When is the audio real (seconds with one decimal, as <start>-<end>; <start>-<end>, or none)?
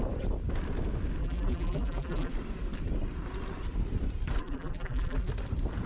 0.0-1.2; 2.3-4.4; 5.3-5.9